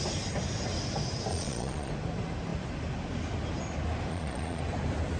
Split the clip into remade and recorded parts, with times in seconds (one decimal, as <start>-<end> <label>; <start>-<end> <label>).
0.0-1.3 recorded; 1.3-1.9 remade; 1.9-4.1 recorded; 4.1-4.6 remade; 4.6-5.2 recorded

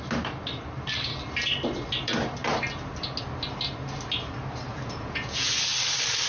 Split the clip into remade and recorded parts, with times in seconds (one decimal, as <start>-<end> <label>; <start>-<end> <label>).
0.0-4.7 recorded; 4.7-5.5 remade; 5.5-6.3 recorded

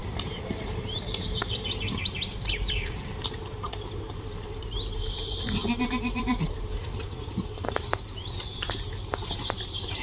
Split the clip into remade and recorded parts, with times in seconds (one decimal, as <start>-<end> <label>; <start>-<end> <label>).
0.0-10.0 remade

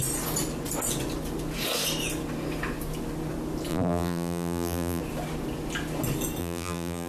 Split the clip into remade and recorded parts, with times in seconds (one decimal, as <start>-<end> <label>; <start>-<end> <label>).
0.0-3.7 recorded; 3.7-5.0 remade; 5.0-6.4 recorded; 6.4-7.1 remade